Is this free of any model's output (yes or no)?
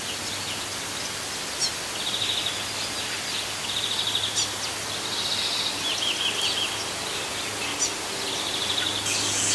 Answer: yes